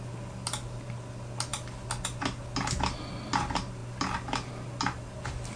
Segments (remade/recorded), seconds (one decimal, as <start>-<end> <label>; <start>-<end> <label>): 0.0-5.6 recorded